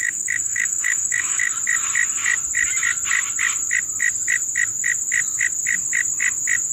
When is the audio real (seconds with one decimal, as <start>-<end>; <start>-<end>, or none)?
1.5-6.7